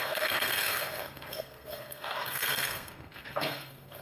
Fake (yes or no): yes